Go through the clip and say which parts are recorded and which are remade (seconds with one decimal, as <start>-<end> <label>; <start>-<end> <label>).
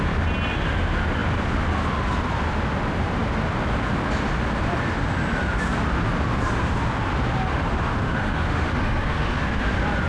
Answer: 0.0-7.5 recorded; 7.5-9.4 remade; 9.4-10.1 recorded